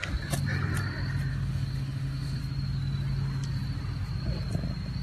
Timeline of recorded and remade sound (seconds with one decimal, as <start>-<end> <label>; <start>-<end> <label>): 0.0-1.3 recorded; 1.3-2.4 remade; 2.4-5.0 recorded